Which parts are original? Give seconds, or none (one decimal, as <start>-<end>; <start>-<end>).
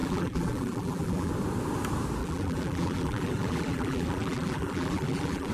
1.3-2.2